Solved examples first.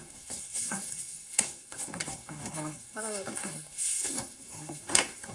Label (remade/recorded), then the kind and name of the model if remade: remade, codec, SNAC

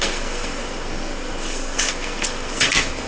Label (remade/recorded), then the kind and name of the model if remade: remade, codec, SNAC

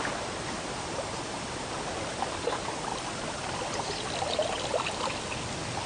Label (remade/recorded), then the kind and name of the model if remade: recorded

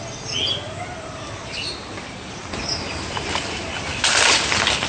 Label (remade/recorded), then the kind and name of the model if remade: recorded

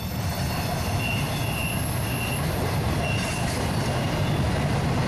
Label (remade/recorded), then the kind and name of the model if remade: recorded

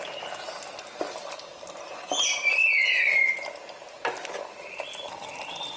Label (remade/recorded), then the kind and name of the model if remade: recorded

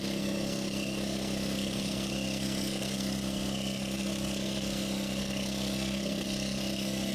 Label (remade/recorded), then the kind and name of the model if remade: remade, codec, SNAC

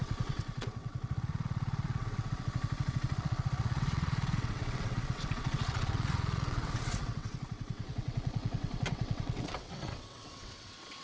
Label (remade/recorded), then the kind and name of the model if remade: remade, vocoder, WaveNeXt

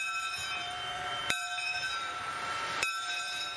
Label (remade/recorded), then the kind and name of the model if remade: remade, vocoder, BigVGAN v2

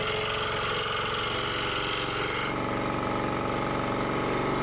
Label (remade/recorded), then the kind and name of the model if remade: recorded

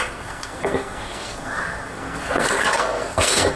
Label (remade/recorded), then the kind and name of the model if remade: remade, codec, SNAC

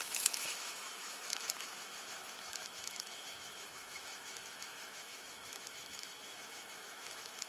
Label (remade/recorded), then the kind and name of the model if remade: remade, autoencoder, DAC-VAE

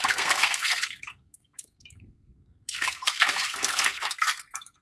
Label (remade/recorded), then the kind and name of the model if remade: remade, codec, SNAC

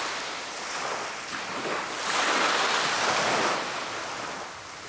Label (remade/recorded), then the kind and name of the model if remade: recorded